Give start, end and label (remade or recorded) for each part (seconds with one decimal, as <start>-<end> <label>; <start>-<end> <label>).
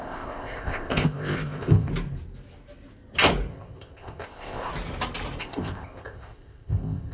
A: 0.0-1.9 remade; 1.9-3.5 recorded; 3.5-4.7 remade; 4.7-5.4 recorded; 5.4-7.1 remade